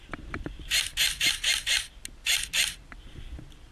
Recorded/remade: recorded